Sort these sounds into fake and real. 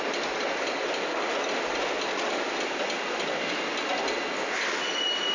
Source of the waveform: real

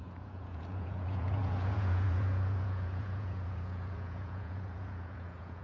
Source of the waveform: fake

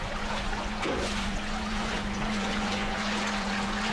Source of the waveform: fake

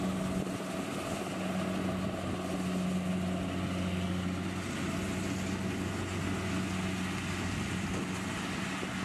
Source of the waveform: real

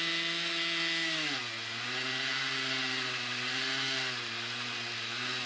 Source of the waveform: real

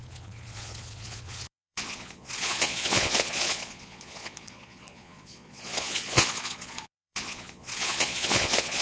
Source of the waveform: fake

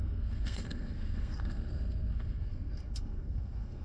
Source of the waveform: fake